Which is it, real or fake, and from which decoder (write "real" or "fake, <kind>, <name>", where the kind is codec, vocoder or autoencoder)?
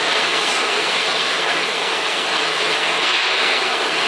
fake, codec, SNAC